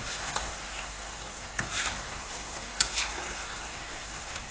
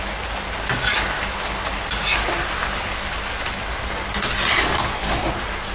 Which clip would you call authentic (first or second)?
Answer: second